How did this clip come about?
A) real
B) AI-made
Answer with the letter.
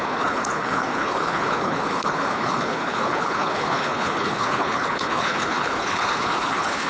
B